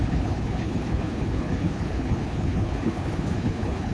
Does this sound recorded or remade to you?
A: remade